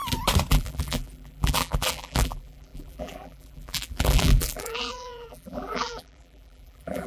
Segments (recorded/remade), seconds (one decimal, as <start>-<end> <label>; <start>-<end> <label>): 0.0-0.5 recorded; 0.5-7.1 remade